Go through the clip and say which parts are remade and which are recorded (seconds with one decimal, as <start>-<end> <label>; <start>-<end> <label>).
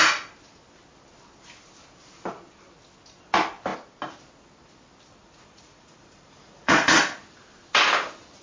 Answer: 0.0-5.2 recorded; 5.2-7.0 remade; 7.0-8.4 recorded